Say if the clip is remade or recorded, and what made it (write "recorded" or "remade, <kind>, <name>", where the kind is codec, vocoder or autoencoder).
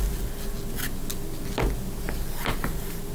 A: recorded